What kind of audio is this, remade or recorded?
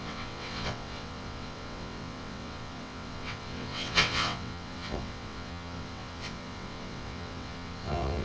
remade